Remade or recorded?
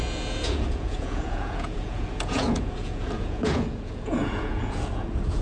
remade